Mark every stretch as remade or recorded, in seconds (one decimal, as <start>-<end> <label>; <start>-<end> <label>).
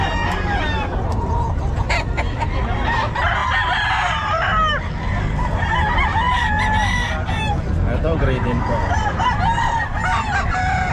0.0-8.0 recorded; 8.0-9.6 remade; 9.6-10.9 recorded